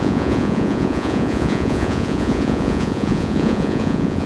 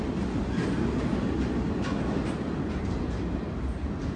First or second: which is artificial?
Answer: first